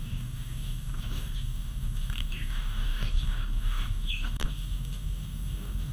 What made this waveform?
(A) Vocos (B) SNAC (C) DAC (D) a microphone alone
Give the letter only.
C